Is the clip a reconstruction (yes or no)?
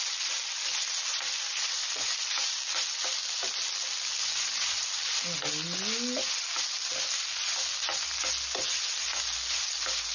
no